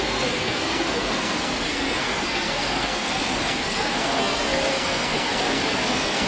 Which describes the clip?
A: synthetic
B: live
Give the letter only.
A